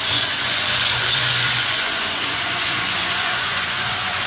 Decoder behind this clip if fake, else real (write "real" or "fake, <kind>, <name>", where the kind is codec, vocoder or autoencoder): fake, vocoder, Vocos